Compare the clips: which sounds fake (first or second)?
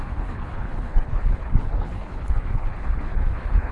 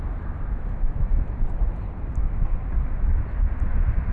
first